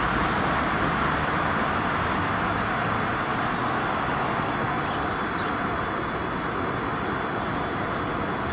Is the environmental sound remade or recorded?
recorded